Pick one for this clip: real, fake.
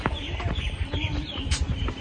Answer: fake